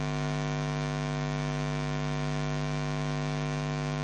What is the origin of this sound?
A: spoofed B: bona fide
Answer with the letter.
A